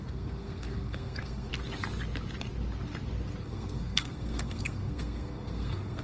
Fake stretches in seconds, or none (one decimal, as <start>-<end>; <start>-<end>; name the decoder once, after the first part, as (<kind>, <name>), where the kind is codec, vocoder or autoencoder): 0.0-1.5 (codec, SNAC); 3.4-6.0